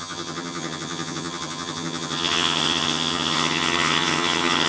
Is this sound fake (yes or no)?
yes